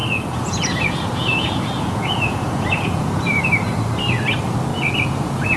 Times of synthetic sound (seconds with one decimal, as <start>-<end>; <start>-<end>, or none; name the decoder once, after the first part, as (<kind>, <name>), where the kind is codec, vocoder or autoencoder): 0.0-3.4 (vocoder, Vocos); 4.7-5.6